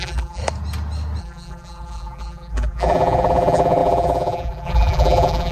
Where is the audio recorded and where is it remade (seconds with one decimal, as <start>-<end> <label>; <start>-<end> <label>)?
0.0-0.4 remade; 0.4-1.2 recorded; 1.2-5.5 remade